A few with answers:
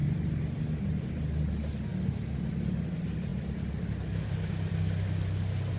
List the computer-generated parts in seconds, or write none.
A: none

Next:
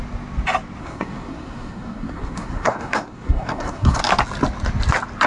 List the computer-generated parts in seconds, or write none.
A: 0.8-4.0 (codec, SNAC)

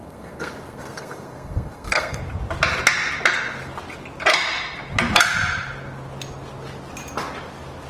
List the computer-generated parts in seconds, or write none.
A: 0.0-2.2 (codec, SNAC)